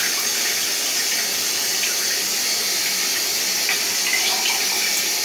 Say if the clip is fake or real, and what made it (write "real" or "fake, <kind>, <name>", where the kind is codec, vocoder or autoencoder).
real